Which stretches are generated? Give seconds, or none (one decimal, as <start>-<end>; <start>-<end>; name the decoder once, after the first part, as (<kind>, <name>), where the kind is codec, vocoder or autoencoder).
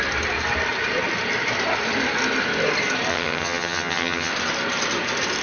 3.1-4.3 (vocoder, HiFi-GAN)